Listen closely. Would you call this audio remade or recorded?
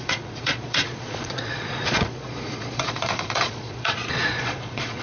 remade